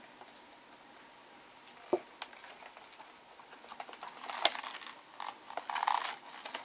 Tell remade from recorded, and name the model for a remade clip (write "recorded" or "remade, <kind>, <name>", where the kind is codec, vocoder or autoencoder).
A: recorded